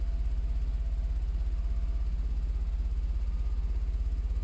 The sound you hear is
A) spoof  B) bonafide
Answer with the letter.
B